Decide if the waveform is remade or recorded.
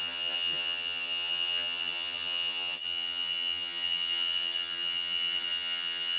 remade